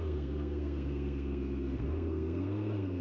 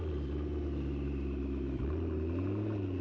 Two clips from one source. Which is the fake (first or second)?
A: first